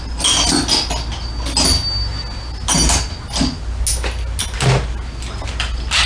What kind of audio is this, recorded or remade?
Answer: recorded